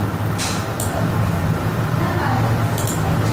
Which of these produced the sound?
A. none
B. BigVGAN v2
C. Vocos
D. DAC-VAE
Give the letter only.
A